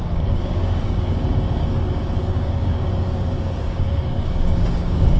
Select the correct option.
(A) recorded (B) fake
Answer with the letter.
B